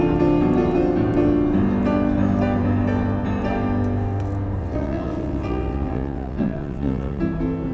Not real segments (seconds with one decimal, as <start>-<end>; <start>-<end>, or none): 4.6-7.2